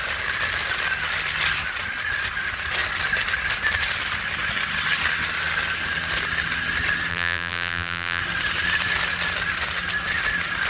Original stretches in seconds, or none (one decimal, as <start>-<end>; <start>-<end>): 0.0-7.1; 8.2-10.7